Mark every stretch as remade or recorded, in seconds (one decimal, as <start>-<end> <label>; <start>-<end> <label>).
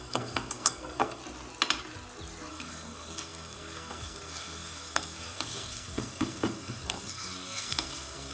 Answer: 0.0-1.2 remade; 1.2-2.5 recorded; 2.5-8.3 remade